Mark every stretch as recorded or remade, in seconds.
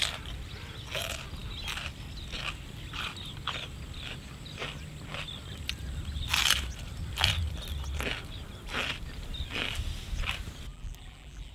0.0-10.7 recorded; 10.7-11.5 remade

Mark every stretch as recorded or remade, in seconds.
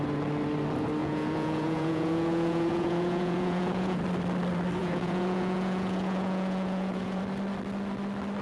0.0-1.0 recorded; 1.0-4.0 remade; 4.0-4.8 recorded; 4.8-7.2 remade; 7.2-8.4 recorded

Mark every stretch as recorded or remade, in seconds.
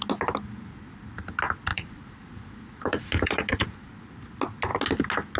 0.0-1.7 recorded; 1.7-3.9 remade; 3.9-5.4 recorded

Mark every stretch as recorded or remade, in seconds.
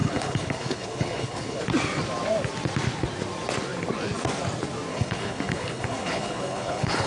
0.0-1.6 remade; 1.6-4.9 recorded; 4.9-7.1 remade